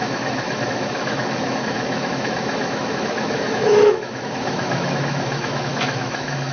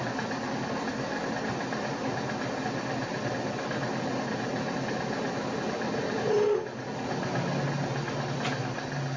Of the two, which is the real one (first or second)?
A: second